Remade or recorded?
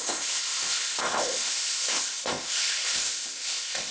remade